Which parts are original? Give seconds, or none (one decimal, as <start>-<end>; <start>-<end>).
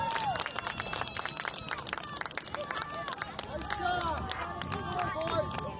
0.0-5.8